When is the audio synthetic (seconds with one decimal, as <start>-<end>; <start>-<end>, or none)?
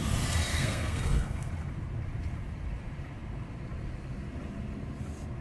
0.5-1.5